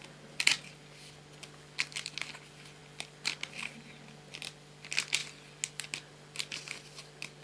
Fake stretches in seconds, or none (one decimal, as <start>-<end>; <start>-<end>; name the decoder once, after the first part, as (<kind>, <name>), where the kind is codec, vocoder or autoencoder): none